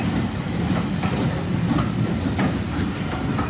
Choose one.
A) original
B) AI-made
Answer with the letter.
A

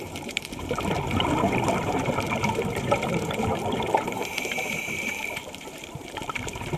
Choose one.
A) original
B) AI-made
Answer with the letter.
B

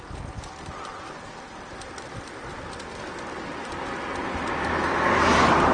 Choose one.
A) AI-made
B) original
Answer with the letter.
B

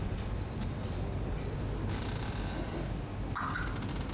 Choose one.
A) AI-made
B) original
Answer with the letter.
B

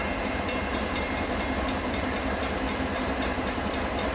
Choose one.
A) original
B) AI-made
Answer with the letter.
B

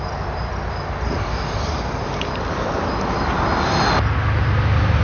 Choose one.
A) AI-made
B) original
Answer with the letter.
B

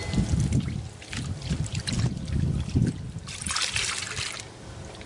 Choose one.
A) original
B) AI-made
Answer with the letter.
A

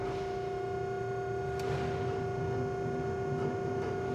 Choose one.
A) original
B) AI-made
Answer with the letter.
A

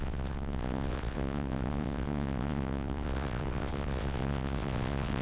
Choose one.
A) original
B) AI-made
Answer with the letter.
B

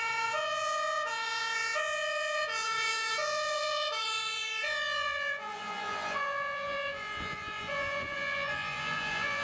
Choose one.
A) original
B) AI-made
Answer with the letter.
B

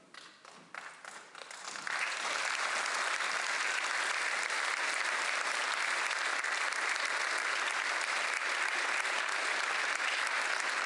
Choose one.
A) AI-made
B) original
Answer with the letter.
B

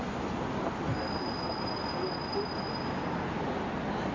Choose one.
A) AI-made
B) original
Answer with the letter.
B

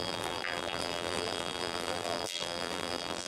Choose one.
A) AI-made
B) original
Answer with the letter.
A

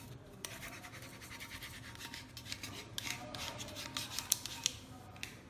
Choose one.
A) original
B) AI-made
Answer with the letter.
A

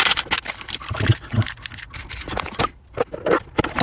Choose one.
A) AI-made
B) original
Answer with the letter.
B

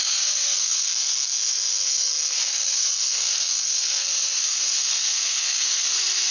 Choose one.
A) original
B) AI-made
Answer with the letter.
B